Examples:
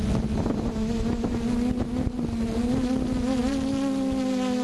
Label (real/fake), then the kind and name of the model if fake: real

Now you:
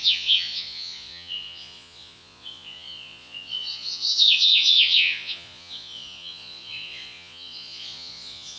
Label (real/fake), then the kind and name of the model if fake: fake, vocoder, Vocos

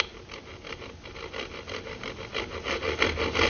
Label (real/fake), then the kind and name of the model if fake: real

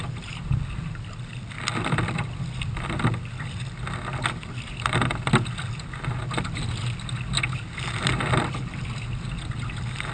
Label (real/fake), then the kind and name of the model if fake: real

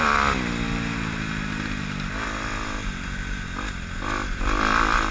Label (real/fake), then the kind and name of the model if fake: real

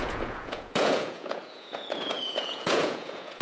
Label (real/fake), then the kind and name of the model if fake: fake, vocoder, Vocos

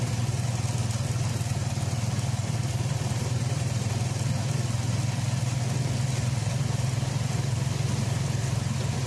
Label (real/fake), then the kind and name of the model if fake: real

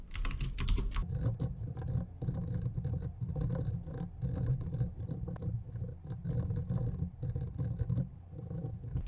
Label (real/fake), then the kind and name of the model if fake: real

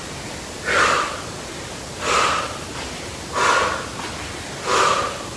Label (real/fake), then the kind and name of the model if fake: real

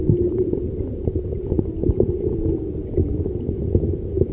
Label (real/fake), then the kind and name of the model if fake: real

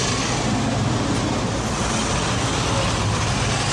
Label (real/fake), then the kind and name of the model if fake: real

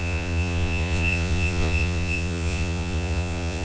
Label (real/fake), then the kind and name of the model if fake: fake, vocoder, Vocos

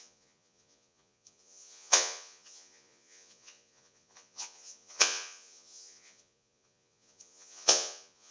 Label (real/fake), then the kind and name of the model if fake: fake, vocoder, Vocos